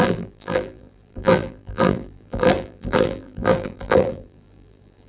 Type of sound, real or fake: fake